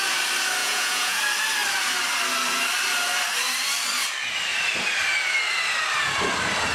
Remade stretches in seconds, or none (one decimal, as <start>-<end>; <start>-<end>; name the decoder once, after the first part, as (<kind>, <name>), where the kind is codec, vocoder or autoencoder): 0.6-1.2 (vocoder, Vocos)